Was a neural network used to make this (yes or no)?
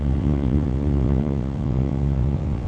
yes